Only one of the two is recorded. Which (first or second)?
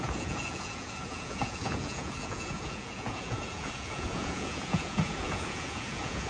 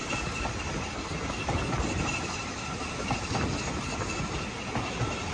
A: second